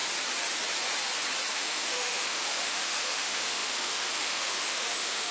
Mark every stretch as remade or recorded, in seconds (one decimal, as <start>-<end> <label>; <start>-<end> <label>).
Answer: 0.0-1.5 recorded; 1.5-5.3 remade